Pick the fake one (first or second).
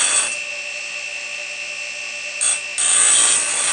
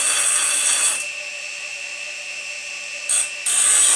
second